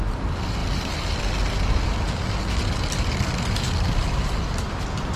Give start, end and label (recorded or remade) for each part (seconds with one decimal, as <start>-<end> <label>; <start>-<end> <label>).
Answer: 0.0-5.2 recorded